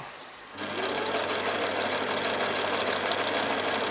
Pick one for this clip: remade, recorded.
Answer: recorded